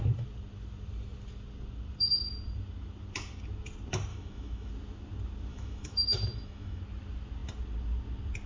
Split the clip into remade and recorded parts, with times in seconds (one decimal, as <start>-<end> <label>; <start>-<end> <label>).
0.0-4.1 recorded; 4.1-4.7 remade; 4.7-5.5 recorded; 5.5-6.8 remade; 6.8-8.5 recorded